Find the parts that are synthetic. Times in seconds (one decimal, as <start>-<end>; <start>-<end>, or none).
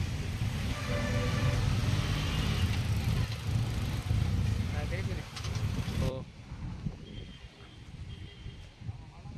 4.0-8.8